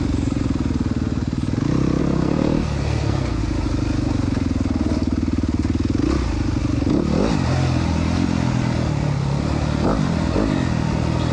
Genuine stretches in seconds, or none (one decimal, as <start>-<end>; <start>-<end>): 0.0-2.0; 3.4-11.3